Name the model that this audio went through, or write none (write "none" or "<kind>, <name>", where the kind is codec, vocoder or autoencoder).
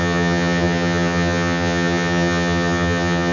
vocoder, HiFi-GAN